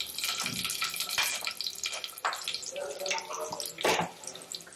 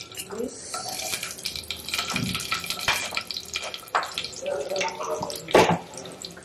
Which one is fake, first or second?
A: second